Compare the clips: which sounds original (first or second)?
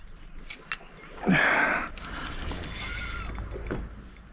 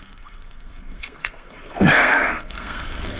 first